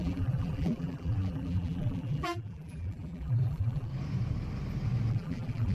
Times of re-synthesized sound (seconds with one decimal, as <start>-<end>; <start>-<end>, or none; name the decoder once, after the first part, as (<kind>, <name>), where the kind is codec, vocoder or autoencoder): 0.0-3.9 (vocoder, BigVGAN v2); 5.1-5.7